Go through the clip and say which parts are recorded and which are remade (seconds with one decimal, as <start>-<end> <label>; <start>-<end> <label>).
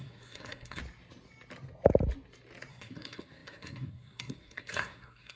0.0-0.8 remade; 0.8-2.7 recorded; 2.7-5.4 remade